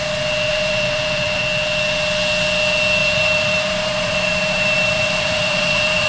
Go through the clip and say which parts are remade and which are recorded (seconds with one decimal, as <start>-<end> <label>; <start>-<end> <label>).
0.0-0.5 recorded; 0.5-1.4 remade; 1.4-3.0 recorded; 3.0-6.1 remade